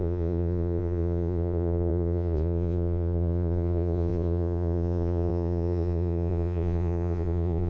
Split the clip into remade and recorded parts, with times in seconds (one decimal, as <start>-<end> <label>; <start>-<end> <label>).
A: 0.0-7.7 remade